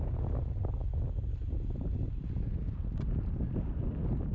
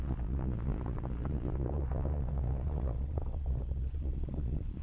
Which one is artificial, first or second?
second